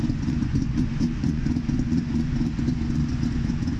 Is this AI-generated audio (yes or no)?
yes